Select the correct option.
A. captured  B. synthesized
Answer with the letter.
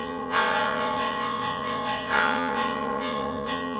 B